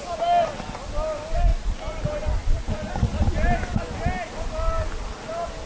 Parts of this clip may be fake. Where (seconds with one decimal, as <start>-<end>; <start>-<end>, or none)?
1.5-2.9